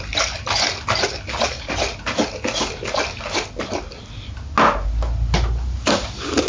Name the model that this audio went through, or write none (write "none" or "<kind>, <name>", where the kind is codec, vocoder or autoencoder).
none